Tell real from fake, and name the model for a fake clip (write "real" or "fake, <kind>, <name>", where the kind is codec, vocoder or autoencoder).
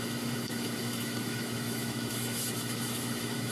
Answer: fake, autoencoder, DAC-VAE